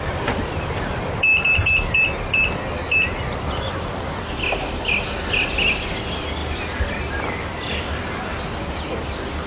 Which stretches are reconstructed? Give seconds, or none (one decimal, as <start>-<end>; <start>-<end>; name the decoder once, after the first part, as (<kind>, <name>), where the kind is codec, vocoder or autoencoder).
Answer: none